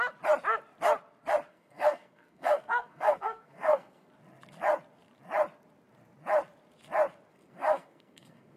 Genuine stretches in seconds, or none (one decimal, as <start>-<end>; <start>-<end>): 0.0-1.5; 4.1-7.3